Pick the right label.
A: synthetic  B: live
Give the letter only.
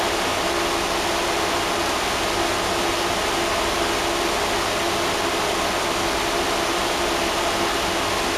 B